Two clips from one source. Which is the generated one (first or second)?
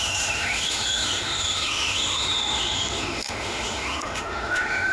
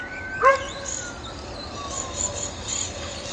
first